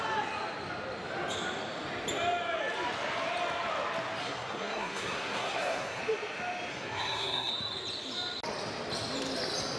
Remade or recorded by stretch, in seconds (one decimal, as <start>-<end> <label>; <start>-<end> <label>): 0.0-4.2 recorded; 4.2-6.0 remade; 6.0-6.7 recorded; 6.7-7.5 remade; 7.5-9.8 recorded